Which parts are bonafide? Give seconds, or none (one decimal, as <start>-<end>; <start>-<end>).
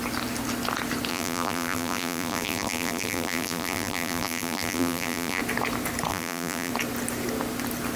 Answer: 0.0-1.1; 5.4-6.1; 6.7-8.0